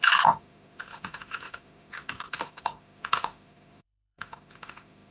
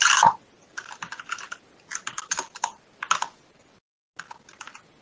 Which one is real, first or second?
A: second